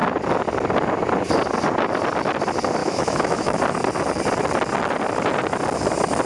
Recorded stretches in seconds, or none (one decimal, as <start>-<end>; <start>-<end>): 0.0-2.8; 3.6-6.3